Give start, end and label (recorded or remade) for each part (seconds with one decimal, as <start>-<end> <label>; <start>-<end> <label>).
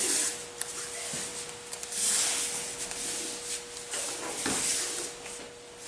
0.0-5.9 recorded